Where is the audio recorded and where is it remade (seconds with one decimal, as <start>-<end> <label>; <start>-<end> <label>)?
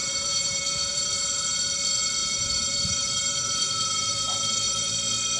0.0-1.1 remade; 1.1-2.2 recorded; 2.2-4.9 remade; 4.9-5.4 recorded